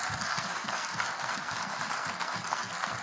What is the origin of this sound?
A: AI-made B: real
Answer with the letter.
A